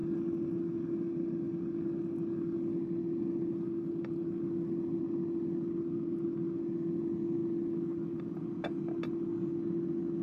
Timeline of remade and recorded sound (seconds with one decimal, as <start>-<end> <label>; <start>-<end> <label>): 0.0-10.2 recorded